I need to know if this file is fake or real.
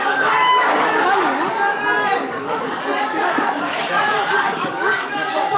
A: fake